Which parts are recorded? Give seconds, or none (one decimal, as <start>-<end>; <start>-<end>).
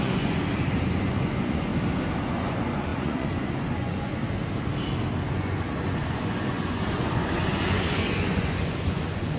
0.5-1.0; 1.7-2.3; 4.2-5.3